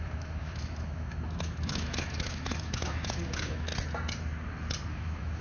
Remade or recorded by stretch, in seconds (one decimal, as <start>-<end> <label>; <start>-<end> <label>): 0.0-3.7 remade; 3.7-4.9 recorded; 4.9-5.4 remade